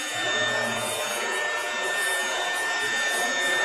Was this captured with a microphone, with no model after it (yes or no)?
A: no